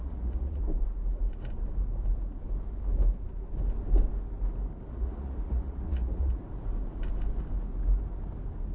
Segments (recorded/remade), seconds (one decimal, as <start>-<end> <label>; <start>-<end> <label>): 0.0-0.6 remade; 0.6-4.9 recorded; 4.9-6.4 remade; 6.4-8.7 recorded